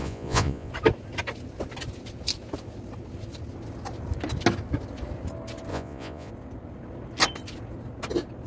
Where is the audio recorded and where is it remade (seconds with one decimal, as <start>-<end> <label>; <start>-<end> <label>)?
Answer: 0.0-0.7 remade; 0.7-5.7 recorded; 5.7-6.3 remade; 6.3-8.5 recorded